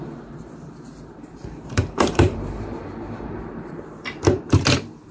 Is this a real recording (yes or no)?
no